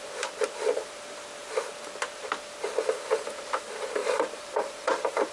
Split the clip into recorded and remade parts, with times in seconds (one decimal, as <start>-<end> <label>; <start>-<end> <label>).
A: 0.0-4.0 recorded; 4.0-5.3 remade